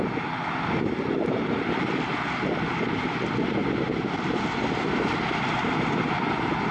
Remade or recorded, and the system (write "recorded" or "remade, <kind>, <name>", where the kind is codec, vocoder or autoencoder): recorded